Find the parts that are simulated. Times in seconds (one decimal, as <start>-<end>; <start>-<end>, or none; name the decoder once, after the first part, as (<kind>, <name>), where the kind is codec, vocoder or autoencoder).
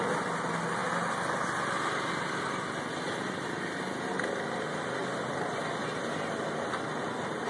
none